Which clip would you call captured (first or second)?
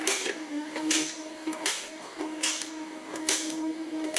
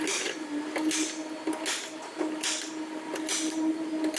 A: second